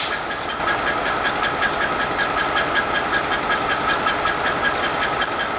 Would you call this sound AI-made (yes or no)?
no